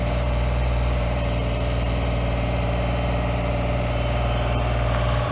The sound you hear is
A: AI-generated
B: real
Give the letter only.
A